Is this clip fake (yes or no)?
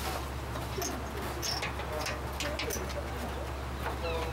no